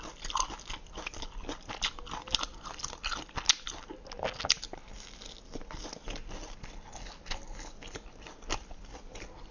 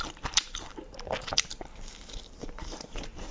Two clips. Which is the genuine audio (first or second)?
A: first